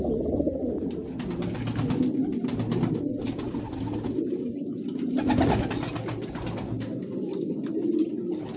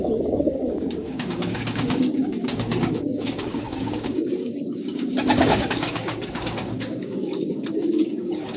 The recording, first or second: first